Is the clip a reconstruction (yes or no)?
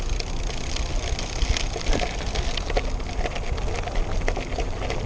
no